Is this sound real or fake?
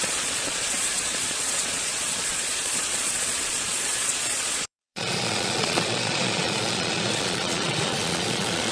fake